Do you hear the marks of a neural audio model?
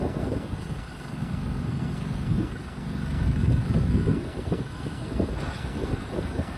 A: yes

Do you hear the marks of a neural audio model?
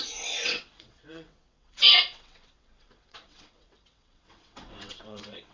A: yes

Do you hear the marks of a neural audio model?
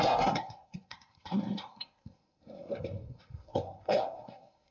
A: yes